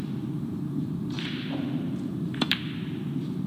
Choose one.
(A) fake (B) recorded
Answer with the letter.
A